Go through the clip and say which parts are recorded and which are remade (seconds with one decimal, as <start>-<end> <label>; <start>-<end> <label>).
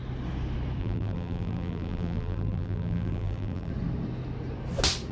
0.0-0.8 recorded; 0.8-3.7 remade; 3.7-5.1 recorded